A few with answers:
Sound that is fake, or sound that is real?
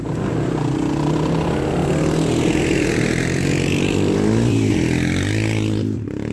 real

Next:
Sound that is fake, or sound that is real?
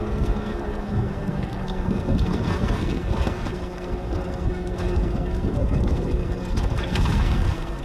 fake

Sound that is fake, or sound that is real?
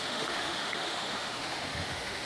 fake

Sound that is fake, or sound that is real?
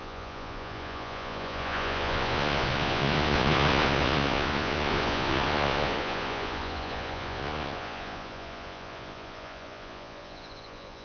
fake